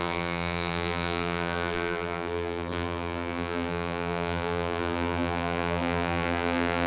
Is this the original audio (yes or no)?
no